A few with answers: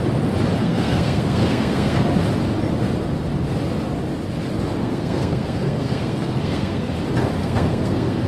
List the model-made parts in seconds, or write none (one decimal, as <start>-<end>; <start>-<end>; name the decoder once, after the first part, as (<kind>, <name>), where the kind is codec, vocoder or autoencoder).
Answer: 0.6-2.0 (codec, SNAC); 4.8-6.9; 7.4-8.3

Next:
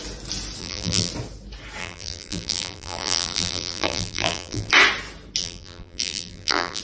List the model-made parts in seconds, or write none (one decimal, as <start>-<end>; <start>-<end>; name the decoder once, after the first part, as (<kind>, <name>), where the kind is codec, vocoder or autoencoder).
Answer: 0.6-1.1 (vocoder, BigVGAN v2); 1.8-4.7; 5.4-6.8

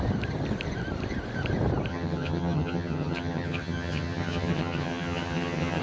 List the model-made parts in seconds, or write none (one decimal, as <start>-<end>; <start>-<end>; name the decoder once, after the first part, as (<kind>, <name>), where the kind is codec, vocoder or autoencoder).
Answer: 1.9-5.8 (vocoder, HiFi-GAN)

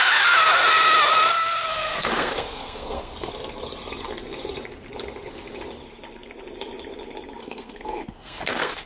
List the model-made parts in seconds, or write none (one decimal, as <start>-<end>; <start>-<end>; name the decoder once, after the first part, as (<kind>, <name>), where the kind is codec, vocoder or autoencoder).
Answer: 1.7-3.3 (codec, SNAC); 7.4-8.9

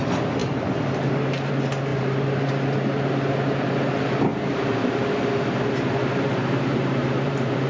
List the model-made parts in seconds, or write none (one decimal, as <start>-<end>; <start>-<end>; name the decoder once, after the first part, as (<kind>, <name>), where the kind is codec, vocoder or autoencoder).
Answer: 1.9-2.5 (vocoder, BigVGAN v2); 4.3-7.7